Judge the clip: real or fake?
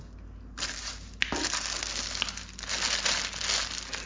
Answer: real